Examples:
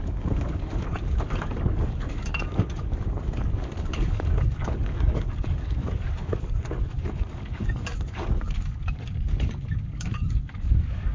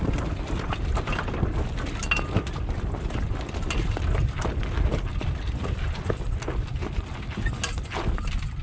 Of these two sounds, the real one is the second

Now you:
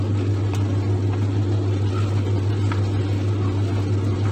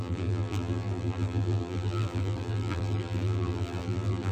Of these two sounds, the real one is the first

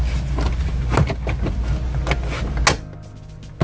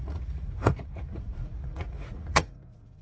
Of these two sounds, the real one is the first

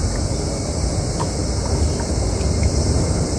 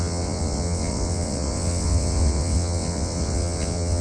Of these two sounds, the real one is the first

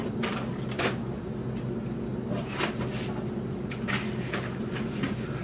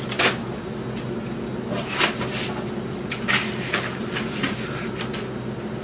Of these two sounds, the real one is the second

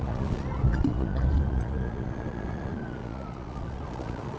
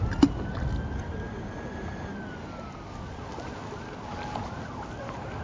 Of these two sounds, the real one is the second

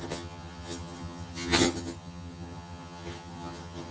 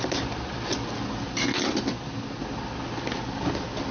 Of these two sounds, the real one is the second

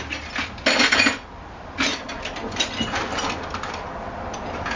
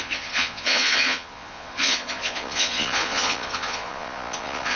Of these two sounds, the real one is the first